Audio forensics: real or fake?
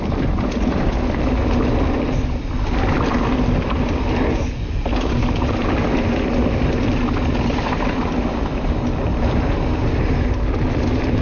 real